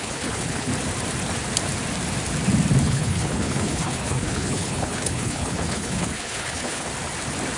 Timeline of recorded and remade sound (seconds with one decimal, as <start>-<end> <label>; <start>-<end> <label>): 0.0-0.7 remade; 0.7-2.8 recorded; 2.8-6.9 remade; 6.9-7.6 recorded